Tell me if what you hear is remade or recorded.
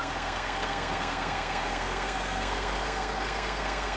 remade